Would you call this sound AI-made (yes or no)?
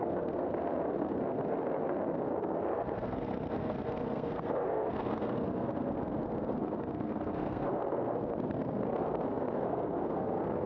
yes